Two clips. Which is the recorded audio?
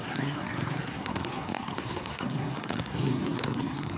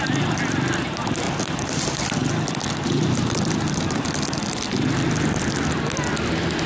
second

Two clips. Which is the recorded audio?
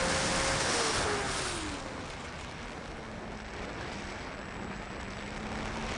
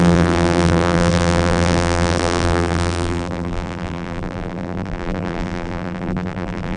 first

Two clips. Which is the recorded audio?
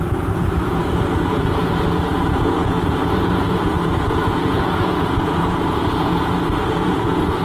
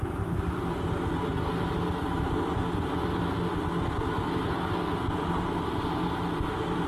second